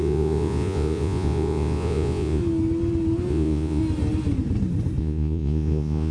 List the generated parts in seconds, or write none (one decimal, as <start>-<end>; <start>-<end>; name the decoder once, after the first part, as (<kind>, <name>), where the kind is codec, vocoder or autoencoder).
0.0-2.4 (vocoder, Vocos); 3.3-3.8; 5.0-6.1